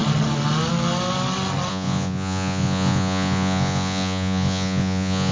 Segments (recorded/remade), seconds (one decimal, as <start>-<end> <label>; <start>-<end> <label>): 0.0-1.7 recorded; 1.7-5.3 remade